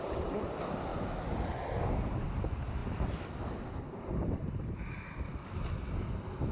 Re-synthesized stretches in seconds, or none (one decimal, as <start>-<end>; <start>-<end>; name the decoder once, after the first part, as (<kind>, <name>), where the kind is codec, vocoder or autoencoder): none